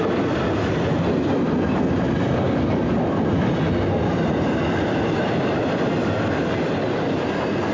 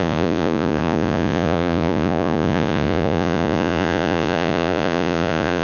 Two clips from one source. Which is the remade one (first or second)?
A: second